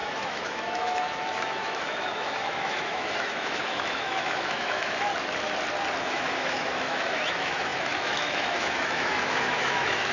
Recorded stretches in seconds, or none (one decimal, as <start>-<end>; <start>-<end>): 5.1-6.0

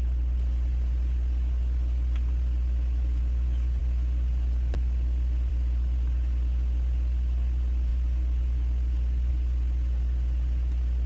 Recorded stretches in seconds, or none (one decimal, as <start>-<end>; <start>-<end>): 0.0-11.1